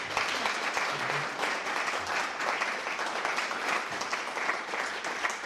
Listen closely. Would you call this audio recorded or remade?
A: remade